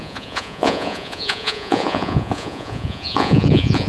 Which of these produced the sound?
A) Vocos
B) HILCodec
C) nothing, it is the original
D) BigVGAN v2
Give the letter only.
A